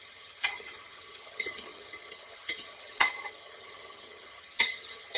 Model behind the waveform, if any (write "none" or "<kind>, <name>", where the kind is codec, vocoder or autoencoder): vocoder, HiFi-GAN